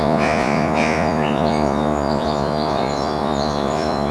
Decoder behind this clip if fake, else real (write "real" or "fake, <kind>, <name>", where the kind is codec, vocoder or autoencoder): fake, vocoder, Vocos